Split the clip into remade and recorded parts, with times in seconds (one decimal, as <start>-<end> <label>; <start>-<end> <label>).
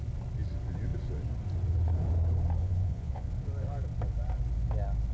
0.0-2.6 recorded; 2.6-3.3 remade; 3.3-5.1 recorded